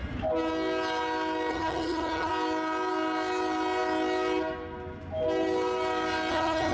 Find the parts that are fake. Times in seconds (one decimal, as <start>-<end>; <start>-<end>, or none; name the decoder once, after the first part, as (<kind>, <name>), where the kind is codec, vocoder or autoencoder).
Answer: 1.5-2.3 (vocoder, HiFi-GAN); 6.3-6.7